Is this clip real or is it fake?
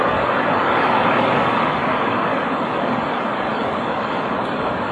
fake